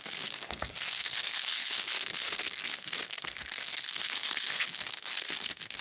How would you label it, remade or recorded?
remade